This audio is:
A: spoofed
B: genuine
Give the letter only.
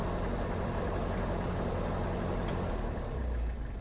B